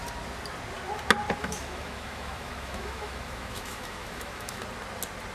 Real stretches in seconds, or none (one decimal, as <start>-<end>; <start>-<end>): 0.0-1.4; 4.6-5.3